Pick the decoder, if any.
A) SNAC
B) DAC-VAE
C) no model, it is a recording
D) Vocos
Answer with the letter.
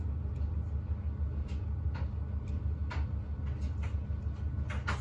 C